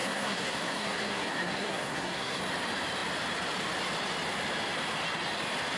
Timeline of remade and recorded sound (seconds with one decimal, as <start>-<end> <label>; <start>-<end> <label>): 0.0-2.4 remade; 2.4-5.8 recorded

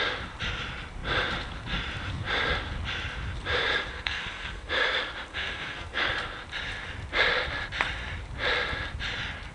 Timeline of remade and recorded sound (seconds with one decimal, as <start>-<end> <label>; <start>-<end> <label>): 0.0-3.9 recorded; 3.9-4.7 remade; 4.7-5.3 recorded; 5.3-6.0 remade; 6.0-9.5 recorded

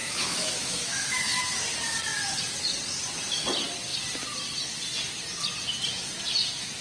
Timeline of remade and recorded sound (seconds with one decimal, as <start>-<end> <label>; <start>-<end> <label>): 0.0-1.4 remade; 1.4-6.8 recorded

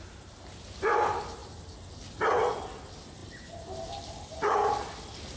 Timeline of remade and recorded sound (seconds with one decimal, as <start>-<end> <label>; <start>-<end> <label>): 0.0-5.4 recorded